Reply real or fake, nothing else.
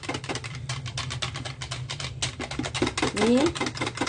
real